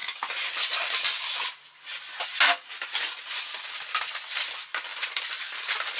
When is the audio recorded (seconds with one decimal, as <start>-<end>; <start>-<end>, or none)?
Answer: 0.0-6.0